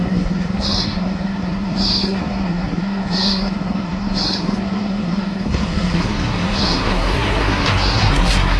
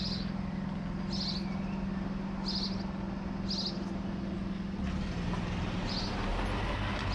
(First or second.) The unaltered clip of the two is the second